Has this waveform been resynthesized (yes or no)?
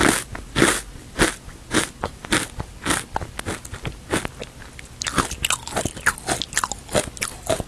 no